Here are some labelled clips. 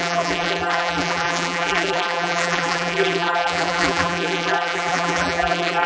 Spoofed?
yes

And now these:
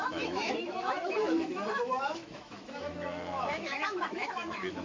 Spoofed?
yes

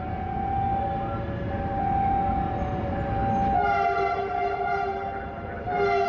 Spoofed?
no